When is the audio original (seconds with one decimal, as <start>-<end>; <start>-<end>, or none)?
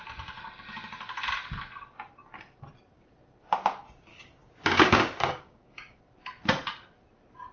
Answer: 0.0-4.1; 6.0-7.5